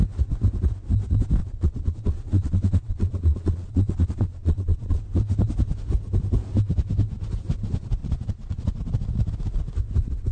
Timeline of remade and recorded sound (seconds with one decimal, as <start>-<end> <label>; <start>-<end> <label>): 0.0-1.4 recorded; 1.4-5.0 remade; 5.0-8.0 recorded; 8.0-8.8 remade; 8.8-10.3 recorded